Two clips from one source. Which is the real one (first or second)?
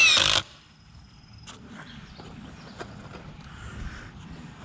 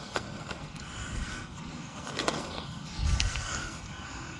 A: first